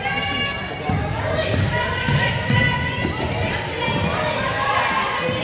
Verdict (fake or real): real